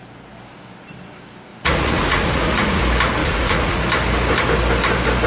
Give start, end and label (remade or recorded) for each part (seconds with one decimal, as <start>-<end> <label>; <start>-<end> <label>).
0.0-1.5 recorded; 1.5-2.8 remade; 2.8-3.2 recorded; 3.2-3.8 remade; 3.8-5.3 recorded